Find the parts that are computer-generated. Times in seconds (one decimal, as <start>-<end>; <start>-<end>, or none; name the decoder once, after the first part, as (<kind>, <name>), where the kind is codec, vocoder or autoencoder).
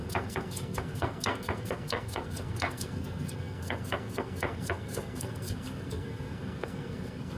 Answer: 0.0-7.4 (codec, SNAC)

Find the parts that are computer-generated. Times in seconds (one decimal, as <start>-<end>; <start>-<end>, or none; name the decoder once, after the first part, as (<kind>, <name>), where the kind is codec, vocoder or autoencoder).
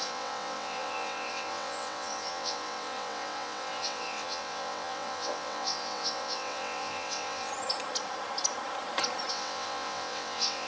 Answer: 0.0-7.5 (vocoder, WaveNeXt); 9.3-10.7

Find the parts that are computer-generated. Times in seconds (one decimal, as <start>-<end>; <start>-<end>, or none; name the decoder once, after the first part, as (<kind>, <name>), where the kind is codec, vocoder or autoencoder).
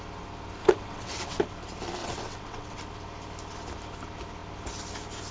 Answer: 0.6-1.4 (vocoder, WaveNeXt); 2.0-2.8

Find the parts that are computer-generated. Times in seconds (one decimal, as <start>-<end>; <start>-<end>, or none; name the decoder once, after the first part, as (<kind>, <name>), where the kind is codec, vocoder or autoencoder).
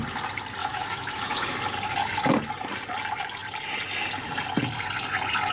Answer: 0.6-1.3 (autoencoder, DAC-VAE)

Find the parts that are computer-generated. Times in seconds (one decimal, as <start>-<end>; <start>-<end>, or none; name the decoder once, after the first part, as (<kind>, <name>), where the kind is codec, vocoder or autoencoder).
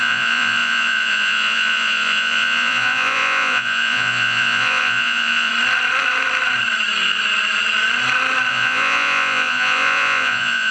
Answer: 0.0-5.5 (vocoder, Vocos); 8.5-10.7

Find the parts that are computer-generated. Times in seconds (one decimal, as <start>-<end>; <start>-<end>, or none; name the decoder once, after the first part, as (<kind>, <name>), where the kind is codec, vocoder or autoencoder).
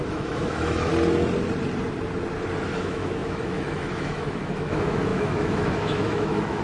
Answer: 0.0-0.9 (autoencoder, DAC-VAE); 2.7-6.6